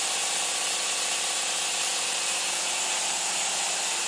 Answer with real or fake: real